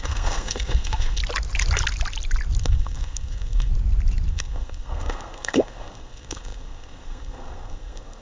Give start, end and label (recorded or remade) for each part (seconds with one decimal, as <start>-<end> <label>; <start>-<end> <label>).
0.0-1.2 remade; 1.2-2.6 recorded; 2.6-3.7 remade; 3.7-4.3 recorded; 4.3-8.2 remade